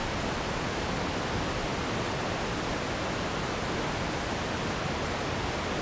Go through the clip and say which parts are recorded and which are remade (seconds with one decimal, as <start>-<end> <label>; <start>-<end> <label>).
0.0-5.8 recorded

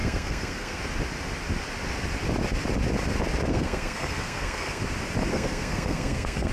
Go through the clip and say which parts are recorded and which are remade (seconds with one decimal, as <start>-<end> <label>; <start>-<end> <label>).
0.0-0.8 remade; 0.8-3.5 recorded; 3.5-4.8 remade; 4.8-5.3 recorded; 5.3-6.5 remade

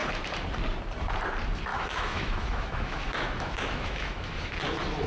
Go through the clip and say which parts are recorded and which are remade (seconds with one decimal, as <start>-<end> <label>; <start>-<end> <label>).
0.0-1.7 recorded; 1.7-4.5 remade; 4.5-5.1 recorded

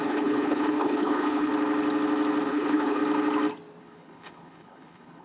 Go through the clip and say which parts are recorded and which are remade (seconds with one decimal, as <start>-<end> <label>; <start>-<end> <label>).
0.0-1.5 remade; 1.5-2.5 recorded; 2.5-3.0 remade; 3.0-3.8 recorded; 3.8-5.2 remade

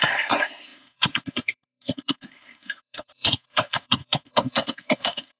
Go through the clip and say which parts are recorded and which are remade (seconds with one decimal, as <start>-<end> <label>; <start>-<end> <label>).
0.0-5.4 remade